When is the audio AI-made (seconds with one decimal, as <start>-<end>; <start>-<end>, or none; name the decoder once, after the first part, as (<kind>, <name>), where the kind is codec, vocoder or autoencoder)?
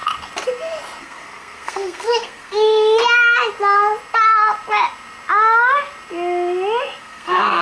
1.0-3.0 (codec, SNAC); 7.0-7.6